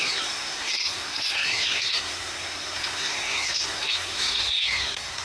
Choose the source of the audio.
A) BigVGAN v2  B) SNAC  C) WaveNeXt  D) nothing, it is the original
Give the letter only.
B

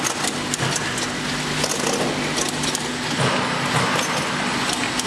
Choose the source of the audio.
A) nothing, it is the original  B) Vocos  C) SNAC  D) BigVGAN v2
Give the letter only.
A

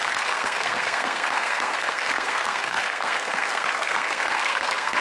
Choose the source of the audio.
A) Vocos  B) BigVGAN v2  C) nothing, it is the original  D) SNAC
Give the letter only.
D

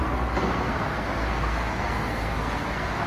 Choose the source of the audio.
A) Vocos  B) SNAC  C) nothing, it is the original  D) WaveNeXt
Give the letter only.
B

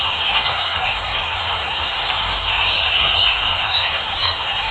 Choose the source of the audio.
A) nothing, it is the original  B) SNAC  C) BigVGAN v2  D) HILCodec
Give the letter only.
B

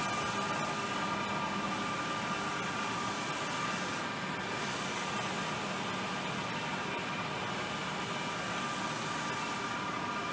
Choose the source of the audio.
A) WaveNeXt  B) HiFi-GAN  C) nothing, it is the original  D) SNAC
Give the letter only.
C